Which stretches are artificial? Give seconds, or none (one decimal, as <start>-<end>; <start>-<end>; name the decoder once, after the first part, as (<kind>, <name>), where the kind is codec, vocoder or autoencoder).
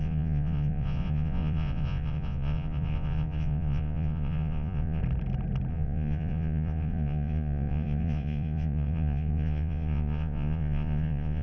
0.0-5.0 (vocoder, Vocos); 5.7-11.4